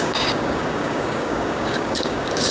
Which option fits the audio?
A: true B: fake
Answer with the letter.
B